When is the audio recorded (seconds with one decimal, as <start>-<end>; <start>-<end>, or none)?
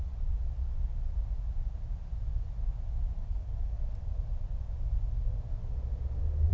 0.0-3.2; 3.8-6.5